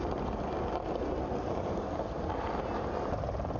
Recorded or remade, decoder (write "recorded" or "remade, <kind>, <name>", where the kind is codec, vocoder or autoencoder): recorded